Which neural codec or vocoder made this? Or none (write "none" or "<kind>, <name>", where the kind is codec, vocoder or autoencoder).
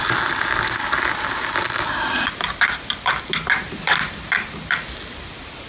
none